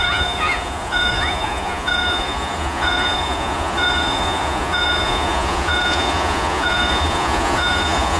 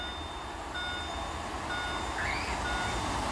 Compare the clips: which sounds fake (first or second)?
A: first